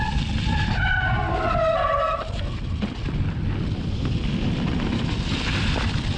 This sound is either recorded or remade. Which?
recorded